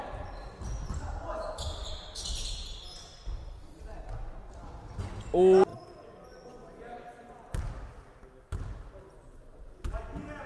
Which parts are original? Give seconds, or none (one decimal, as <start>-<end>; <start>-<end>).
0.0-10.5